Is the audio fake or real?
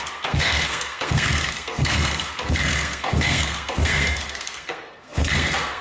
fake